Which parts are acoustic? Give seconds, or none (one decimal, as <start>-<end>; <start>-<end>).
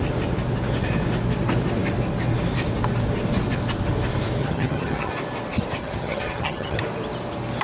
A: 0.0-4.4; 5.1-5.8; 6.8-7.6